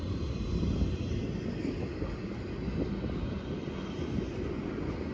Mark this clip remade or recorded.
recorded